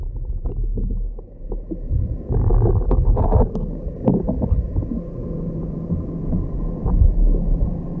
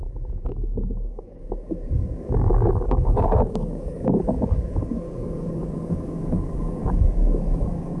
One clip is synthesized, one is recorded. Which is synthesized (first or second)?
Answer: second